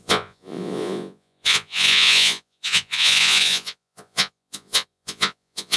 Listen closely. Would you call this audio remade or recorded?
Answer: remade